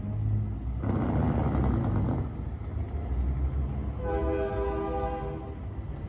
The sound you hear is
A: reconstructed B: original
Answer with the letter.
B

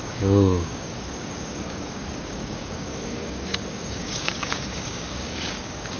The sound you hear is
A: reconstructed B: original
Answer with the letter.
A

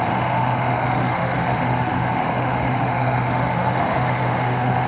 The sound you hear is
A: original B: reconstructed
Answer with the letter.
B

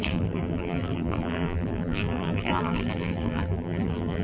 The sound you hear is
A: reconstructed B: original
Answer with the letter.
A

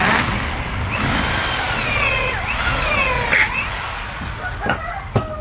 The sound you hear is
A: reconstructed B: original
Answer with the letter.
B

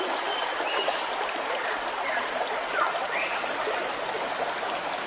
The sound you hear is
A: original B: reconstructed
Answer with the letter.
A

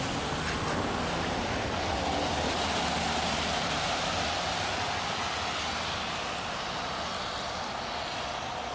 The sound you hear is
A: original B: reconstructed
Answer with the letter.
A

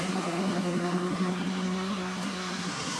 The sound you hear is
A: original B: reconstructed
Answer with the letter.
B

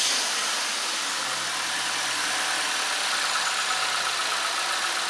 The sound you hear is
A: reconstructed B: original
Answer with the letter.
B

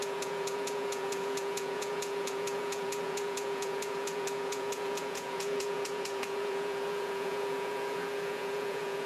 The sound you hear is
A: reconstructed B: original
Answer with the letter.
A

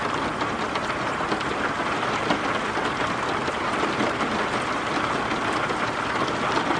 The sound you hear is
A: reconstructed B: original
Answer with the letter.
B